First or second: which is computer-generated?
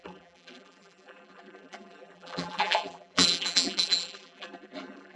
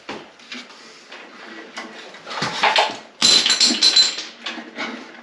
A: first